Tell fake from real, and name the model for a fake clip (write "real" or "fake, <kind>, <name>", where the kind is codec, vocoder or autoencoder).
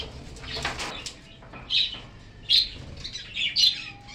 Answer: real